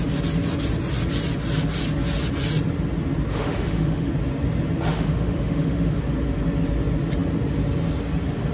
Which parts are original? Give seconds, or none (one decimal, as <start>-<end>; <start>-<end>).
0.0-3.3; 4.1-4.9; 6.0-8.5